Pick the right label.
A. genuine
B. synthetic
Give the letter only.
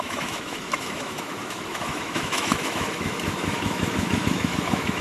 B